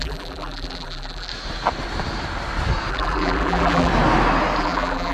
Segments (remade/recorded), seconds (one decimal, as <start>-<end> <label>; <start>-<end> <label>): 0.0-1.3 remade; 1.3-2.9 recorded; 2.9-3.9 remade; 3.9-4.6 recorded; 4.6-5.1 remade